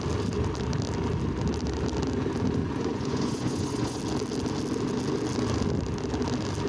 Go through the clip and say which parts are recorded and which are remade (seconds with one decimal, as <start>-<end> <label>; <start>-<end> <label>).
0.0-2.6 recorded; 2.6-4.0 remade; 4.0-6.7 recorded